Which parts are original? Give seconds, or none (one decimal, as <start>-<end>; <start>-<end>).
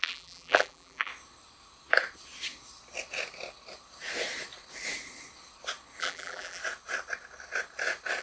1.1-6.0; 6.6-8.2